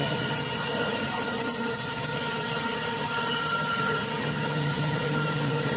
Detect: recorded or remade remade